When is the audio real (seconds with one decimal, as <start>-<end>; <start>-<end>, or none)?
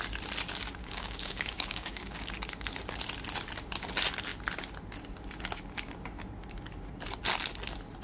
0.0-0.8; 2.3-8.0